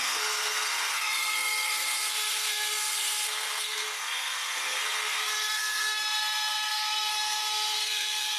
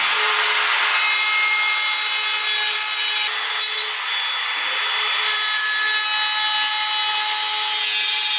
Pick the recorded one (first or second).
second